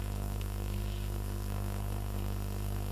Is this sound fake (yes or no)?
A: yes